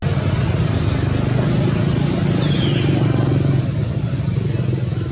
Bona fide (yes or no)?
yes